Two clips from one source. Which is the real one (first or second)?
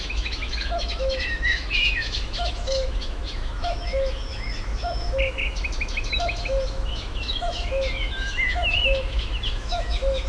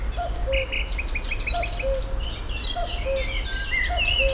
second